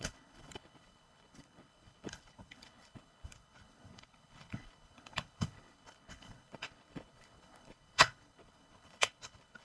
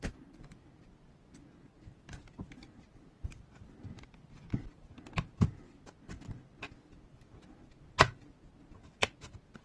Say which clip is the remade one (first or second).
first